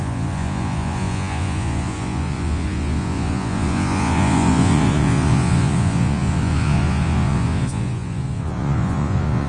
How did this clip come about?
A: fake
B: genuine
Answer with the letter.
A